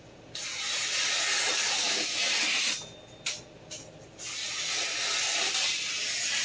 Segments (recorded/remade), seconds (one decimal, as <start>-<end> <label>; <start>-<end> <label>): 0.0-6.4 recorded